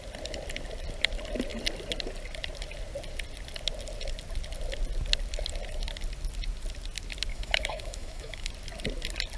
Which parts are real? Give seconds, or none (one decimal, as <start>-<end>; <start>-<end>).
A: 0.0-7.3; 8.5-9.4